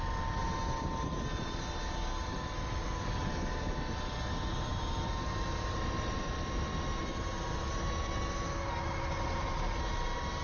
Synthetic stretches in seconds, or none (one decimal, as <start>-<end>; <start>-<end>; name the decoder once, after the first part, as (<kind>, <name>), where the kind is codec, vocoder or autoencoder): none